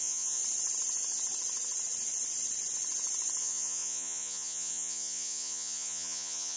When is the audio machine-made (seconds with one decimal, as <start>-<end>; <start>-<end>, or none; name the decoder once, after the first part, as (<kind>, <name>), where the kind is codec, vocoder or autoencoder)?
0.0-0.4 (vocoder, Vocos); 3.4-6.6